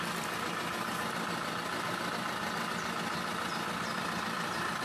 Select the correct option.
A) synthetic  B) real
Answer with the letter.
B